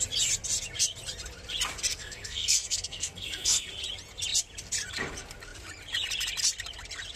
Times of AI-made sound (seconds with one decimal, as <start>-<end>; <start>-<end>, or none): 1.9-3.7